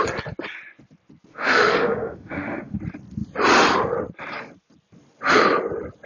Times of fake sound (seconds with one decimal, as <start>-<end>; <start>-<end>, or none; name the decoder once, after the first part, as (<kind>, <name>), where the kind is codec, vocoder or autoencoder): 1.3-2.8 (autoencoder, DAC-VAE)